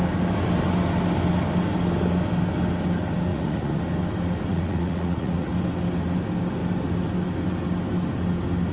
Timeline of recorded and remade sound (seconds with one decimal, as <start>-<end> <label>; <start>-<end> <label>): 0.0-3.3 recorded; 3.3-3.8 remade; 3.8-4.5 recorded; 4.5-5.5 remade; 5.5-8.7 recorded